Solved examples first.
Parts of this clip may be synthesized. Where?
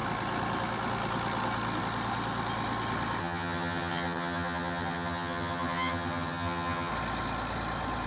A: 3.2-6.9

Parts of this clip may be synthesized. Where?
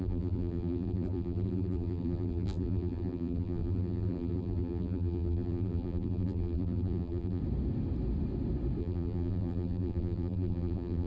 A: 0.0-7.4; 8.8-11.1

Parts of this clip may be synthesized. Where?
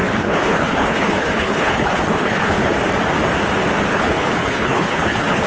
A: 0.0-2.7; 3.9-5.5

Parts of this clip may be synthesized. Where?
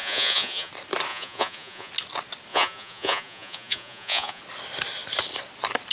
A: 0.0-0.7; 1.1-1.9; 2.5-4.4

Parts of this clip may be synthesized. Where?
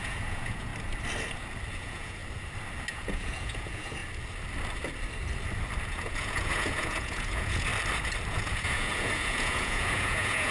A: 0.0-0.7; 1.7-2.2; 2.9-4.0; 5.8-7.7; 8.3-10.5